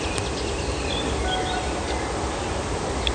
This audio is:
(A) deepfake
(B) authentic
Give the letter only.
B